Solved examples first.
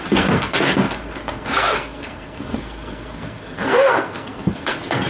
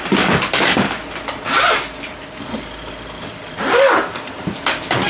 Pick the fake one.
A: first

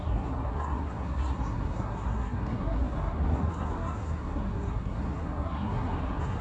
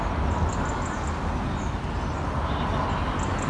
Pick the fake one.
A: first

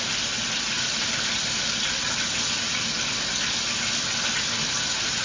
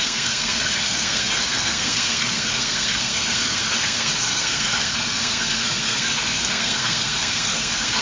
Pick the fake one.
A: second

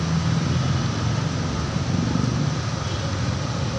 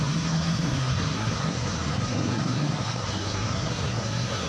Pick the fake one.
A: second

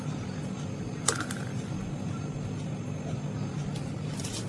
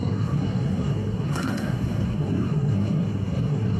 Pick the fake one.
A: second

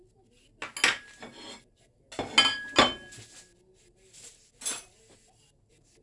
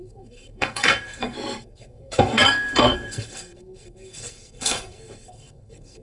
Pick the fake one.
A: second